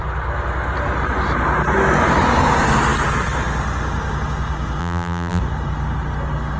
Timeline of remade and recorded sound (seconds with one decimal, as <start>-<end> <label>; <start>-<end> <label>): 0.0-4.8 recorded; 4.8-5.4 remade; 5.4-6.6 recorded